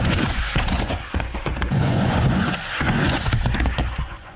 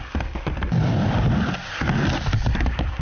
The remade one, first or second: first